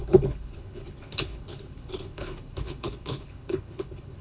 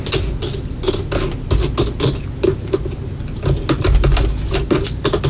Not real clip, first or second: first